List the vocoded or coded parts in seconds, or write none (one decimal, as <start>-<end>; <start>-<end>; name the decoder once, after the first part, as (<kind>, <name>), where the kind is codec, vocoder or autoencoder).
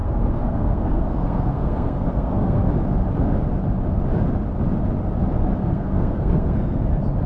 0.0-2.7 (codec, SNAC); 5.6-6.8